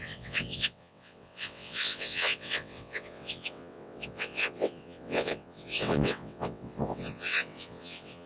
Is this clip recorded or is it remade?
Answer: remade